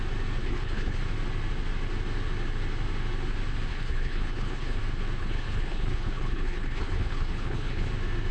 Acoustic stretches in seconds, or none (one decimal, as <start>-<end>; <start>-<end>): 0.0-0.4; 1.0-3.7; 4.8-5.2; 7.9-8.3